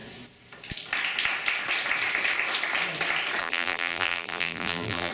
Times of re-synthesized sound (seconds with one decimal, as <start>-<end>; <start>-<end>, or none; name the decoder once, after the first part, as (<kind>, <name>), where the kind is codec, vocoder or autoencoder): 3.4-5.1 (vocoder, BigVGAN v2)